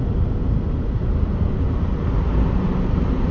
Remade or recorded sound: recorded